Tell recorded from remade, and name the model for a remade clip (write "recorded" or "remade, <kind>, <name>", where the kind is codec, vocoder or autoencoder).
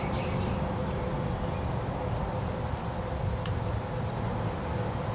recorded